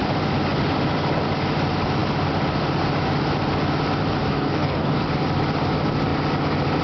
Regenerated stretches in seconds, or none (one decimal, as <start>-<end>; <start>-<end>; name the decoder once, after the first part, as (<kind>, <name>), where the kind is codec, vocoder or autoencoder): 4.3-5.0 (codec, DAC)